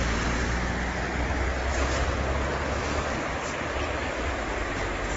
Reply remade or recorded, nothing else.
recorded